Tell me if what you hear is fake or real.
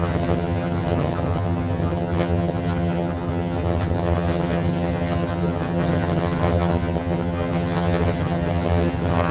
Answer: fake